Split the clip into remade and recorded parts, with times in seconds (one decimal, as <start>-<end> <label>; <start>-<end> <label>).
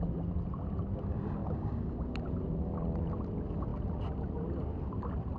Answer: 0.0-5.4 recorded